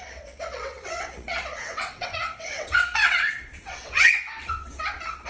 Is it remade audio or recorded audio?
remade